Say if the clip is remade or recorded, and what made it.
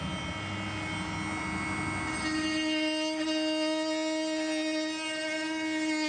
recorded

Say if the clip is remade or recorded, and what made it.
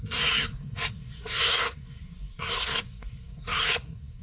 remade, codec, SNAC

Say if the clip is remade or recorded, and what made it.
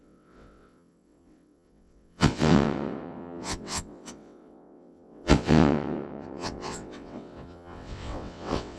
remade, vocoder, WaveNeXt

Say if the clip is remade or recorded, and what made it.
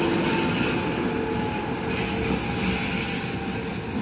recorded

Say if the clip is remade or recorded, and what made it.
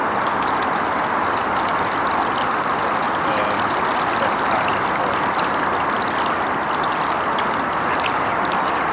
recorded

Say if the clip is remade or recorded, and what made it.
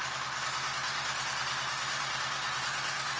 recorded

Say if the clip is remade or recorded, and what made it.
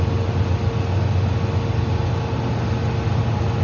recorded